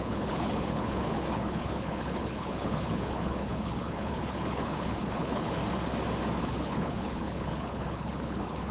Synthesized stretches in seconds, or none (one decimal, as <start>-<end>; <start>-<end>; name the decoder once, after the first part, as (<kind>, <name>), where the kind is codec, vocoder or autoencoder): 0.0-5.6 (codec, HILCodec); 6.4-8.7